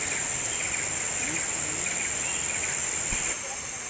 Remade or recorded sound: recorded